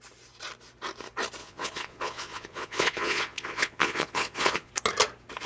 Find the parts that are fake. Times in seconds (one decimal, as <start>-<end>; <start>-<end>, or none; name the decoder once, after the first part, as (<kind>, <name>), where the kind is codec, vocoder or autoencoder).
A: 1.4-4.7 (vocoder, Vocos)

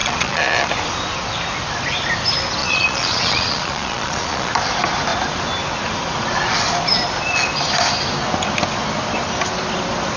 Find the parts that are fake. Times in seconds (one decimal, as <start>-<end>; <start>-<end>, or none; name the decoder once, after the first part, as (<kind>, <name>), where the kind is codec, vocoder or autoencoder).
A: 0.0-0.7 (vocoder, Vocos); 2.6-4.5